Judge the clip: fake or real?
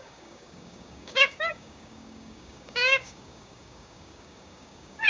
fake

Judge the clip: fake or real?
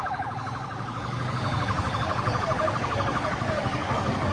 fake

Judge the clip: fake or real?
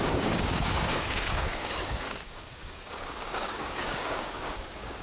fake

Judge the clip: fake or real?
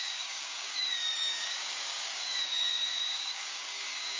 fake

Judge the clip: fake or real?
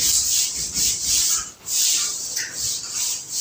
real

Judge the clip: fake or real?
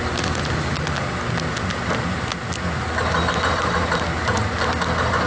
real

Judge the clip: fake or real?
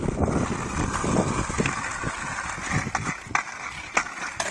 real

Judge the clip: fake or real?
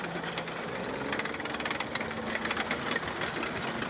real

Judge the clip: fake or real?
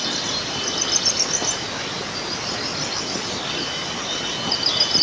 real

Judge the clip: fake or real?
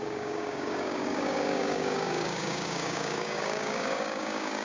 fake